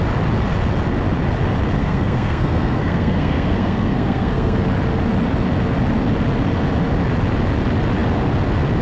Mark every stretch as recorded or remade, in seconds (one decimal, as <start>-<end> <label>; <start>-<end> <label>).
0.0-1.8 recorded; 1.8-4.6 remade; 4.6-8.8 recorded